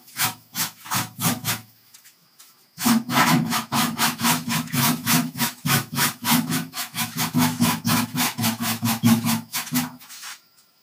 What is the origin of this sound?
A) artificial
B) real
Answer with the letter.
A